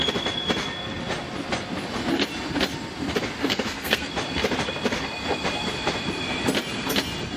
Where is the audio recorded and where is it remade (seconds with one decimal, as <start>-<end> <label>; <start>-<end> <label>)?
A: 0.0-3.4 recorded; 3.4-4.1 remade; 4.1-7.4 recorded